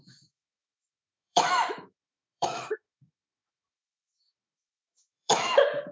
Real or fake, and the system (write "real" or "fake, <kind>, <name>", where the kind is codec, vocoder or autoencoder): fake, autoencoder, DAC-VAE